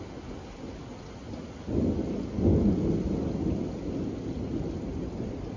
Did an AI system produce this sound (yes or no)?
no